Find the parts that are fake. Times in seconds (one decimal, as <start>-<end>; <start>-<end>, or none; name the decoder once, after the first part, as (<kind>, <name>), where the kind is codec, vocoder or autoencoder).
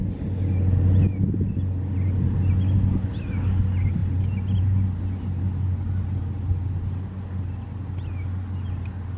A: none